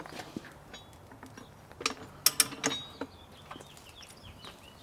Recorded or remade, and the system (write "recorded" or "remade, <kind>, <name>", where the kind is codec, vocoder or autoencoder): recorded